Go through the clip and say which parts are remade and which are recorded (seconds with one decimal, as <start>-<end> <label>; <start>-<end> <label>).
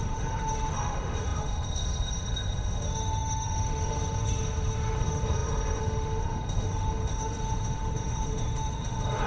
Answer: 0.0-9.3 remade